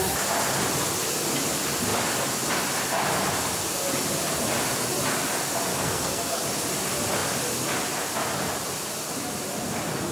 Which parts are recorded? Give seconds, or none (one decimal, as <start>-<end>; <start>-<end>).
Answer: 0.0-5.7; 6.4-10.1